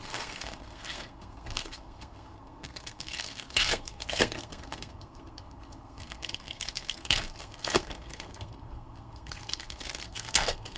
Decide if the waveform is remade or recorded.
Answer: remade